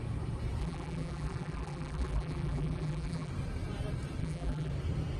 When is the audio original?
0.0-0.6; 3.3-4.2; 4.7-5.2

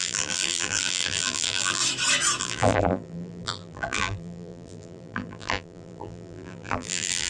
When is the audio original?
1.8-2.4

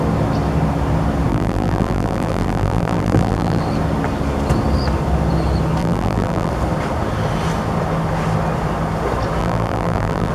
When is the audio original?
0.0-1.3; 3.6-5.8; 6.5-9.4

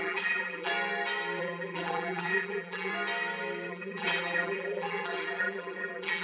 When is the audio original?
0.7-1.4; 2.9-3.7

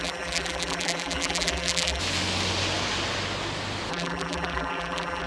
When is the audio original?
2.0-3.9